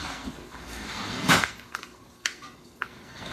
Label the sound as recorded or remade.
remade